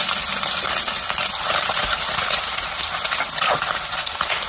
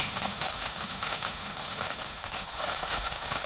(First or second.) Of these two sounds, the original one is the first